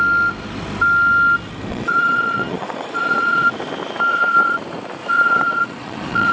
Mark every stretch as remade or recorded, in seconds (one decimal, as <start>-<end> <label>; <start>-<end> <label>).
0.0-1.7 recorded; 1.7-3.5 remade; 3.5-4.1 recorded; 4.1-4.6 remade; 4.6-5.0 recorded; 5.0-6.3 remade